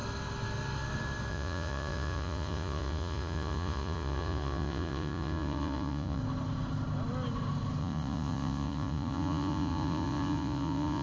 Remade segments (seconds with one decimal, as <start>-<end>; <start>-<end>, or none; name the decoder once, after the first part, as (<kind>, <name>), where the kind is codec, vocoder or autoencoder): 1.3-6.2 (vocoder, Vocos); 7.8-11.0